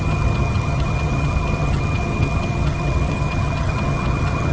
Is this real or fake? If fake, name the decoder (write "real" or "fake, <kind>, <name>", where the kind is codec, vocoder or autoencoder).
fake, vocoder, HiFi-GAN